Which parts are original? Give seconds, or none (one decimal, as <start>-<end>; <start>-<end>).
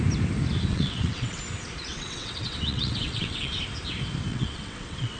0.0-0.7; 1.4-1.9; 3.6-4.3